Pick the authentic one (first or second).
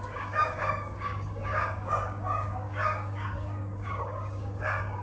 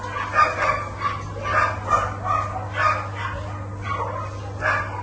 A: second